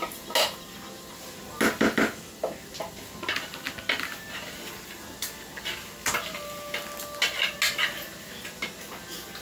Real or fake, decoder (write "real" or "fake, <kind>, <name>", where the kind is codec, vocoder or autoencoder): real